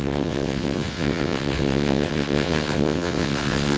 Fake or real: fake